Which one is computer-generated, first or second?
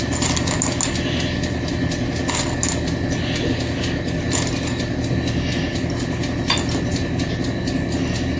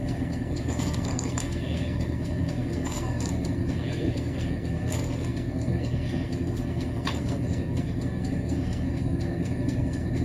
second